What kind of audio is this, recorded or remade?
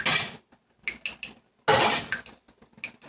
recorded